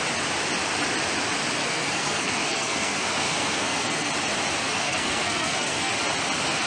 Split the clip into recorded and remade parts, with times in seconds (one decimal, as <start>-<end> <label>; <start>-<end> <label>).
0.0-1.6 recorded; 1.6-4.1 remade; 4.1-4.6 recorded; 4.6-5.9 remade; 5.9-6.7 recorded